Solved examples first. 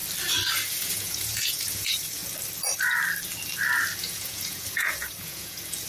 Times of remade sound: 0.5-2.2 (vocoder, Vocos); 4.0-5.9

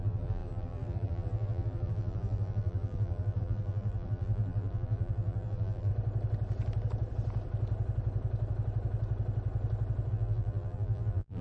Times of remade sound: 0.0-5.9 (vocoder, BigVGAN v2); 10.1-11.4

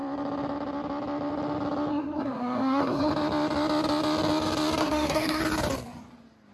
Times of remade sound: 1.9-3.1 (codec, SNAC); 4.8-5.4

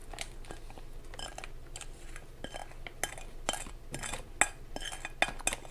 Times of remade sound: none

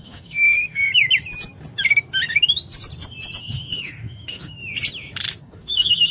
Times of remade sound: 0.0-0.8 (autoencoder, DAC-VAE); 3.4-4.6; 5.4-6.1

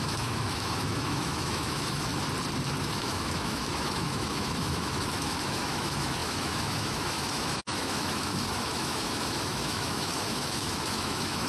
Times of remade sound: 0.0-2.1 (autoencoder, DAC-VAE); 2.8-11.5

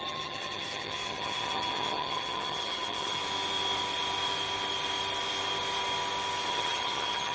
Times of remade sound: 0.0-3.2 (vocoder, HiFi-GAN); 6.5-7.3